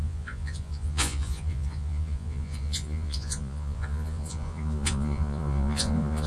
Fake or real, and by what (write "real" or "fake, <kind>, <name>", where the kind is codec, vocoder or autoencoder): fake, vocoder, Vocos